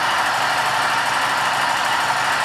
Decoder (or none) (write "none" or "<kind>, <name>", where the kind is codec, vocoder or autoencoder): none